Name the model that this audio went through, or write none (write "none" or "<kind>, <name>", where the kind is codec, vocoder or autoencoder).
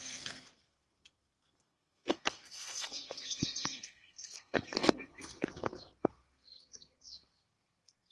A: codec, SNAC